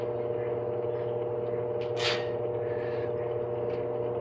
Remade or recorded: recorded